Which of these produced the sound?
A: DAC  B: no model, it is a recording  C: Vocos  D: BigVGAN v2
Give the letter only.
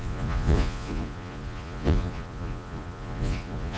C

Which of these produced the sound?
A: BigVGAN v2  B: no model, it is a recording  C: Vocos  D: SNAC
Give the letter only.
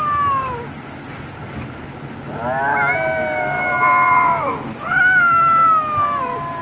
B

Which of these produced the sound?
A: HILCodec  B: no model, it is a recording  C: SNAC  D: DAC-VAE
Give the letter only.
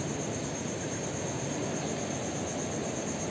B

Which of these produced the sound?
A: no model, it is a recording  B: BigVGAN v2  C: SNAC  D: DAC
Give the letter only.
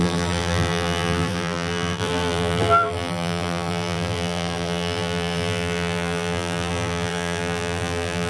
B